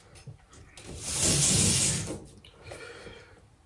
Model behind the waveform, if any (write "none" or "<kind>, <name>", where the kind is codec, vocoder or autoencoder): none